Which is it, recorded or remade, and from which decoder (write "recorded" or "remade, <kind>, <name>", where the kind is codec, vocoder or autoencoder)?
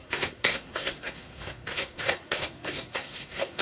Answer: remade, codec, SNAC